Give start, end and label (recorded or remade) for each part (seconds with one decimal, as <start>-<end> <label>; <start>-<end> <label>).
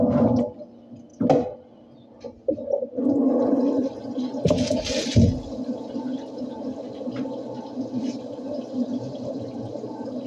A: 0.0-10.3 recorded